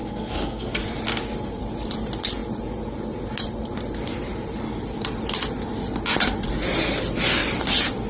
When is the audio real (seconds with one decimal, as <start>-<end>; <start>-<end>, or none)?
0.8-8.1